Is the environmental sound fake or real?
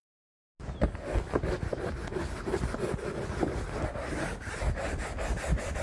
real